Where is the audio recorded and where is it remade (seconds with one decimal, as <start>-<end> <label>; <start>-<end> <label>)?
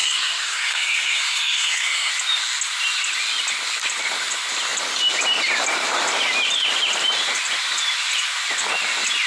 0.0-2.1 remade; 2.1-9.3 recorded